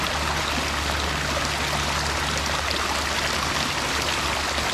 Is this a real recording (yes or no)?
yes